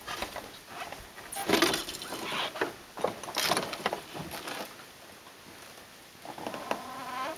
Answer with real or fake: real